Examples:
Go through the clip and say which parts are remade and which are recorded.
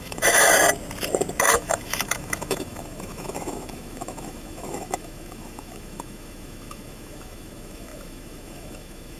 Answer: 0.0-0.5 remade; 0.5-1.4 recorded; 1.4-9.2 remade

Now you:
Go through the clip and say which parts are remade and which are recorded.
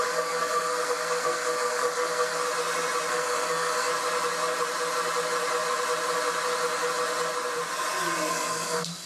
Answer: 0.0-2.4 remade; 2.4-3.1 recorded; 3.1-3.9 remade; 3.9-8.3 recorded; 8.3-9.1 remade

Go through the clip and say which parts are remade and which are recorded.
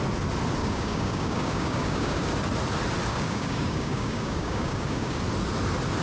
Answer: 0.0-0.6 recorded; 0.6-2.3 remade; 2.3-3.1 recorded; 3.1-5.2 remade; 5.2-6.0 recorded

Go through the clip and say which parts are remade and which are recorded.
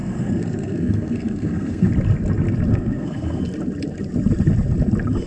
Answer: 0.0-1.9 remade; 1.9-2.7 recorded; 2.7-3.4 remade; 3.4-5.3 recorded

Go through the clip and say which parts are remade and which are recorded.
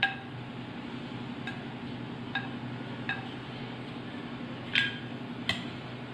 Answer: 0.0-6.1 recorded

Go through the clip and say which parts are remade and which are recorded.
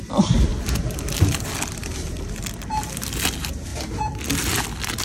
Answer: 0.0-0.5 recorded; 0.5-2.3 remade; 2.3-5.0 recorded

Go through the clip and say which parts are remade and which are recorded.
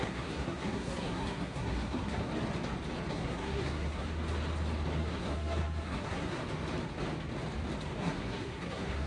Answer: 0.0-2.3 remade; 2.3-3.1 recorded; 3.1-4.1 remade; 4.1-5.0 recorded; 5.0-6.4 remade; 6.4-8.0 recorded; 8.0-9.1 remade